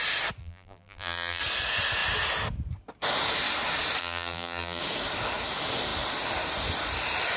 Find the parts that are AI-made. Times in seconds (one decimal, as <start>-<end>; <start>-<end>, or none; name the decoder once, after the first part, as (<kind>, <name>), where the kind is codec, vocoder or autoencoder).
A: 0.4-1.4 (vocoder, BigVGAN v2); 4.0-4.8